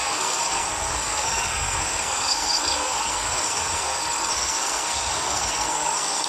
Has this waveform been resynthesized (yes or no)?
yes